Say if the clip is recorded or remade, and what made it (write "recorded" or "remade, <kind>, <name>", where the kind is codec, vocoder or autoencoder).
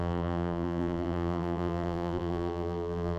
remade, vocoder, BigVGAN v2